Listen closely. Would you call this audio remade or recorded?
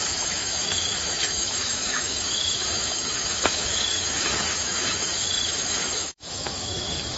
remade